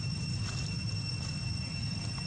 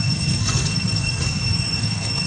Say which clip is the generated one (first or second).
second